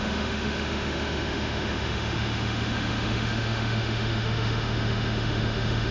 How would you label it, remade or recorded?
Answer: remade